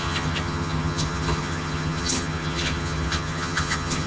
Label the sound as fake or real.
fake